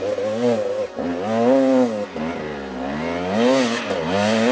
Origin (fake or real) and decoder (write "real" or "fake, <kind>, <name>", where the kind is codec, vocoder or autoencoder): real